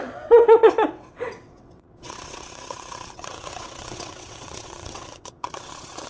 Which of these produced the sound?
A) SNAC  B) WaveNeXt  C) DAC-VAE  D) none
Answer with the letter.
B